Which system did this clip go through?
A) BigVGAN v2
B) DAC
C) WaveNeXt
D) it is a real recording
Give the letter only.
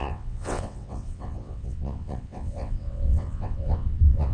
C